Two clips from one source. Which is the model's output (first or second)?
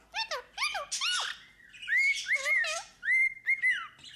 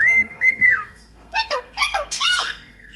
second